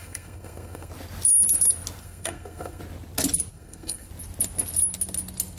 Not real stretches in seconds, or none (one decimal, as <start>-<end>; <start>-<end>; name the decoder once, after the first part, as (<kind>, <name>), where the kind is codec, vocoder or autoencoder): 0.0-0.9 (codec, SNAC); 2.0-2.8; 3.5-4.1